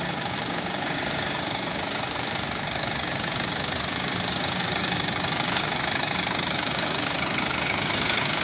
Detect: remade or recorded remade